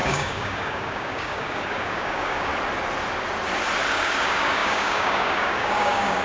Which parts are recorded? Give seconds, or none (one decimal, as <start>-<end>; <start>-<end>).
2.5-3.9